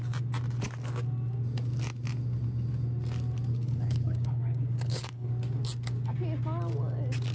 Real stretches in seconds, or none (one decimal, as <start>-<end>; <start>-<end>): 0.0-3.5; 5.3-7.3